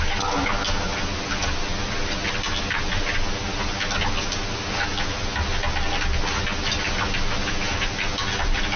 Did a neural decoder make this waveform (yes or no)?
no